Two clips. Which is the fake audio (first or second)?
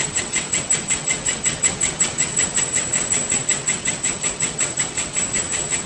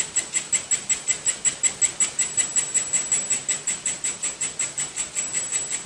first